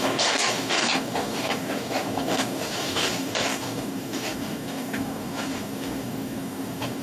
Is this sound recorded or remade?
remade